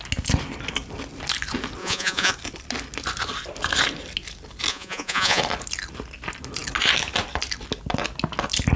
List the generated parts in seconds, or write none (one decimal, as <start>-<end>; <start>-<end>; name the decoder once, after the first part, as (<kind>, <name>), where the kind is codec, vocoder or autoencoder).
1.8-2.3 (vocoder, Vocos); 4.7-5.4